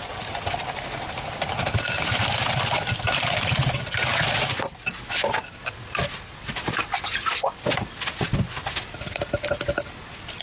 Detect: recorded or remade recorded